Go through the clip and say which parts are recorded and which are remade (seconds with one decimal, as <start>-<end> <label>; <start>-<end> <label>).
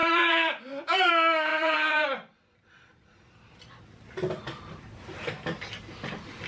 0.0-1.1 remade; 1.1-1.5 recorded; 1.5-3.7 remade; 3.7-6.5 recorded